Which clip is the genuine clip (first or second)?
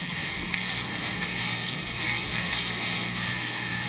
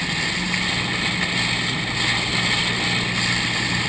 second